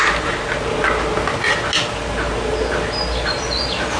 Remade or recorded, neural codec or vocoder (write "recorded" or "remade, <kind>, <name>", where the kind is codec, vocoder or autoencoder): recorded